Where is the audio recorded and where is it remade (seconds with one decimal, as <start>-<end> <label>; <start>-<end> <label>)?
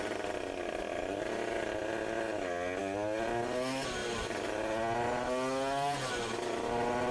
0.0-7.1 recorded